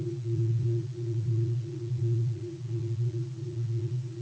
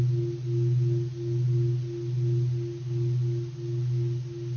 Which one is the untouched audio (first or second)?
second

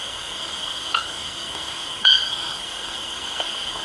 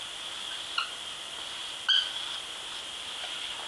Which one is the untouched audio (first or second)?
second